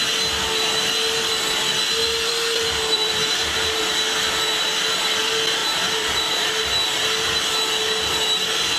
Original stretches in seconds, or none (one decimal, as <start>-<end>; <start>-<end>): 0.0-2.0; 3.8-5.6; 6.5-8.8

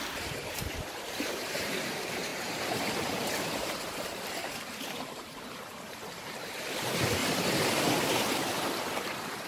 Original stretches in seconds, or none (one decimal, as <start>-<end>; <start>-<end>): 7.2-7.8

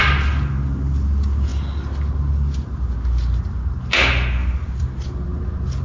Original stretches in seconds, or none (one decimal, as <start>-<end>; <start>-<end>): 0.0-5.8

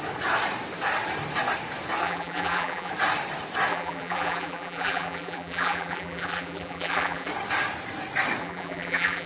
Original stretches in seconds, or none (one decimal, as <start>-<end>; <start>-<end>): 0.0-2.0; 2.9-3.7; 7.3-8.4